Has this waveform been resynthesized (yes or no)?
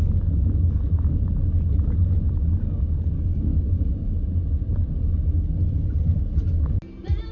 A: no